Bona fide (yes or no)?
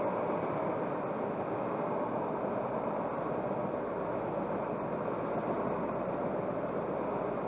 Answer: yes